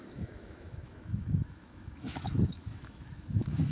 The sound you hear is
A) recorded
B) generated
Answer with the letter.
B